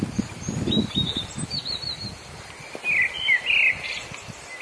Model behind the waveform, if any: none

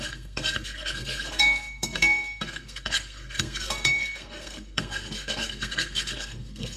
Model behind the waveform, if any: codec, SNAC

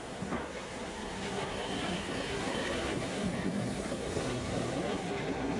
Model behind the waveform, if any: codec, SNAC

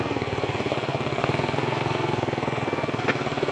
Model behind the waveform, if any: codec, SNAC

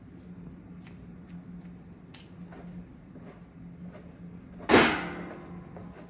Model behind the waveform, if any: none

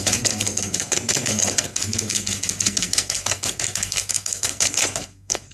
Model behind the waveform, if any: codec, SNAC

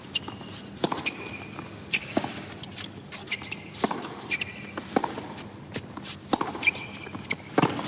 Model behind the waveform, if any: none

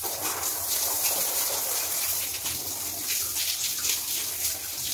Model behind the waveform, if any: none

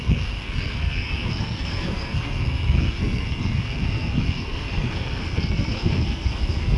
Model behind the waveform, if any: codec, SNAC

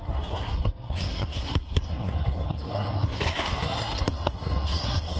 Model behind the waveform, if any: codec, SNAC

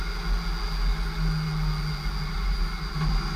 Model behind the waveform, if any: none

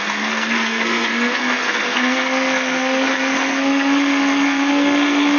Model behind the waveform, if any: codec, SNAC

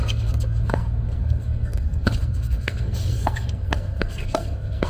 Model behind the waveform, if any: codec, SNAC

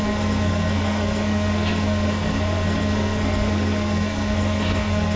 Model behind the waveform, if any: codec, SNAC